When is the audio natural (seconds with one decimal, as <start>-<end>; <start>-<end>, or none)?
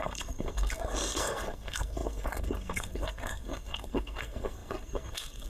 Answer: none